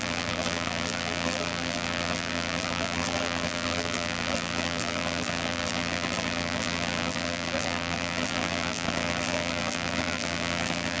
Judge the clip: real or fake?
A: fake